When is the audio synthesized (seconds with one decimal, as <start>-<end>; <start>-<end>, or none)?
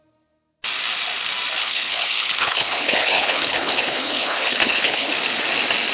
1.6-5.1